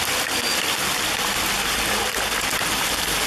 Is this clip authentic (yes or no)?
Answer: yes